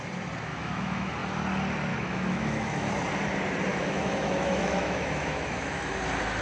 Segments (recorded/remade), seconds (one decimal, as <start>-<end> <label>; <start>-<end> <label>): 0.0-0.5 recorded; 0.5-1.1 remade; 1.1-1.9 recorded; 1.9-2.9 remade; 2.9-3.7 recorded; 3.7-5.9 remade; 5.9-6.4 recorded